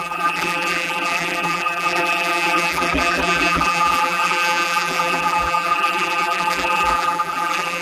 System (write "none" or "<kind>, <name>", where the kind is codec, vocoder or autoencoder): vocoder, BigVGAN v2